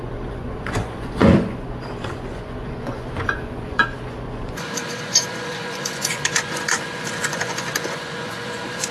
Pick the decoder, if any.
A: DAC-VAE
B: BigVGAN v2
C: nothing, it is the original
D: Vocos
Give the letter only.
D